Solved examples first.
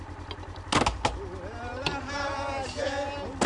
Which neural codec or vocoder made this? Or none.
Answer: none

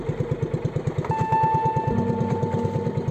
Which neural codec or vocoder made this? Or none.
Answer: none